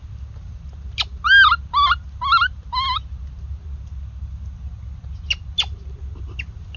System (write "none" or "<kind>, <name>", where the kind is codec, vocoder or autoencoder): none